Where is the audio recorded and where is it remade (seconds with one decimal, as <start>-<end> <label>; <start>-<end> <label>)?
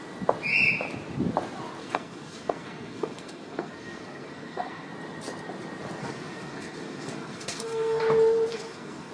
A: 0.0-1.8 recorded; 1.8-4.9 remade; 4.9-6.0 recorded; 6.0-8.0 remade; 8.0-8.5 recorded; 8.5-9.1 remade